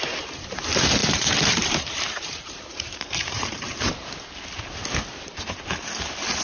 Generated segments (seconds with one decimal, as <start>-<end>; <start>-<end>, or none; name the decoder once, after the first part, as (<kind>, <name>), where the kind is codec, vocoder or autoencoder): 1.0-4.2 (vocoder, BigVGAN v2)